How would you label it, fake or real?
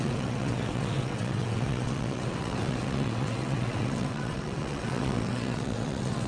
fake